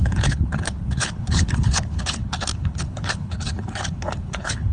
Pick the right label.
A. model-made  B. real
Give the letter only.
A